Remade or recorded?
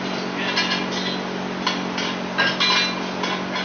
recorded